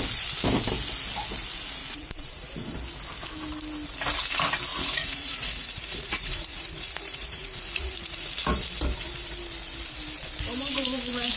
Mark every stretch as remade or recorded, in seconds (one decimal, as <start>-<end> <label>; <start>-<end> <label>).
0.0-1.8 recorded; 1.8-2.4 remade; 2.4-4.7 recorded; 4.7-8.3 remade; 8.3-11.4 recorded